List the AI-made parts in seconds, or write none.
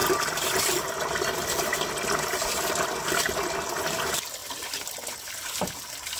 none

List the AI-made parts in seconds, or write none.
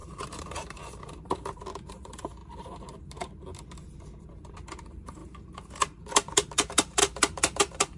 0.0-2.4 (vocoder, BigVGAN v2); 4.2-8.0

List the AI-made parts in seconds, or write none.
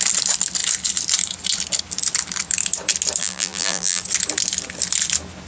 3.2-4.0 (vocoder, BigVGAN v2)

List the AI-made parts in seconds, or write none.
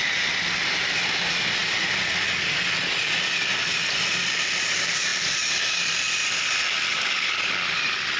6.9-7.5 (codec, DAC)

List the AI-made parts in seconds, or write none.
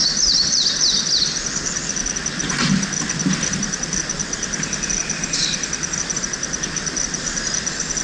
none